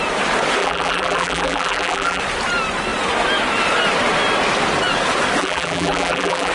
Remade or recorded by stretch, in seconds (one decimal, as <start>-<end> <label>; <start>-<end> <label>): 0.0-0.6 recorded; 0.6-2.2 remade; 2.2-5.4 recorded; 5.4-6.5 remade